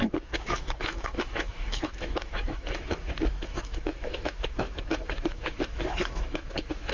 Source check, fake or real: fake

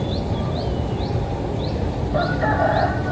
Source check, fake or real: real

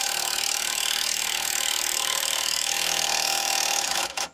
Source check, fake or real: fake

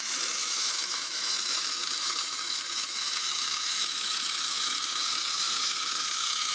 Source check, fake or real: fake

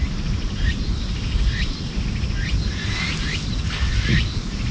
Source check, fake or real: real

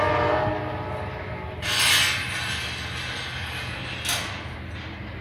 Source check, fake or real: real